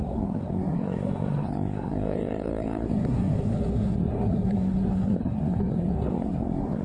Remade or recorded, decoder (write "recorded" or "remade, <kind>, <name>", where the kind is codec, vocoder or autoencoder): remade, codec, SNAC